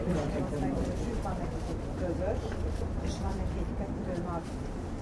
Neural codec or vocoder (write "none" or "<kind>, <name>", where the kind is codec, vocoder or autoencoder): vocoder, BigVGAN v2